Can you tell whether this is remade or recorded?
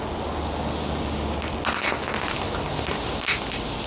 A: recorded